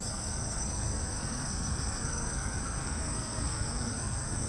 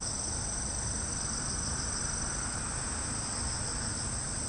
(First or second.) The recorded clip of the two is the second